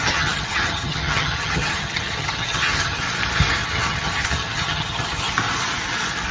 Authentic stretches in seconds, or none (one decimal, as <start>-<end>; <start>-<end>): 3.0-3.6; 5.3-6.3